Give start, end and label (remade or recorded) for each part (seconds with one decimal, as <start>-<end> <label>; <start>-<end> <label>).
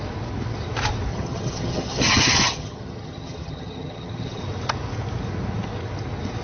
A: 0.0-1.1 recorded; 1.1-4.4 remade; 4.4-6.4 recorded